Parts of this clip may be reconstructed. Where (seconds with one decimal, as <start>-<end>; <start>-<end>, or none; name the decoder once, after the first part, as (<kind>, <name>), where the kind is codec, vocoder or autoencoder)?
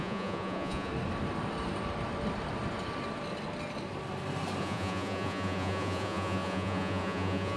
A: 0.0-0.9 (vocoder, Vocos); 4.6-7.6